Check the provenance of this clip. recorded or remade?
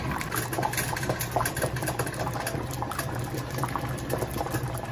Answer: recorded